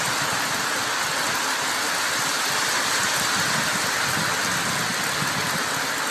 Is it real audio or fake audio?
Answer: real